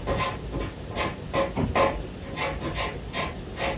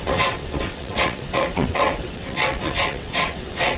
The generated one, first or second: second